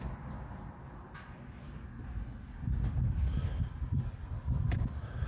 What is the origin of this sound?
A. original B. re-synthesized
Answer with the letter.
A